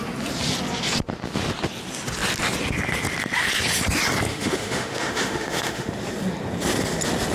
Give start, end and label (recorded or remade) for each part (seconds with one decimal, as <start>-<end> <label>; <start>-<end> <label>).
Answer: 0.0-4.3 recorded; 4.3-5.9 remade; 5.9-7.3 recorded